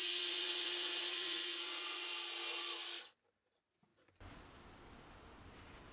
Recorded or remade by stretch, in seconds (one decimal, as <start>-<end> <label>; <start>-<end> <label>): 0.0-2.1 remade; 2.1-3.9 recorded; 3.9-4.4 remade; 4.4-5.9 recorded